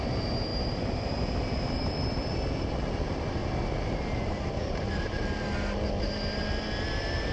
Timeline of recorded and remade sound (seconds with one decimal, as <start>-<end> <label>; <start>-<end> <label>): 0.0-0.5 recorded; 0.5-2.3 remade; 2.3-7.3 recorded